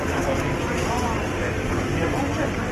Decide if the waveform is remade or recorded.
recorded